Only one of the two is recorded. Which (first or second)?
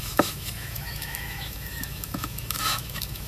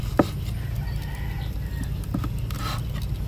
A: second